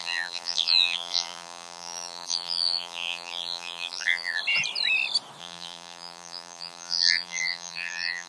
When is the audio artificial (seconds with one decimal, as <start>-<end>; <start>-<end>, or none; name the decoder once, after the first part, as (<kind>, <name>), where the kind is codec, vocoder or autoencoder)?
0.0-4.4 (vocoder, BigVGAN v2); 5.4-8.3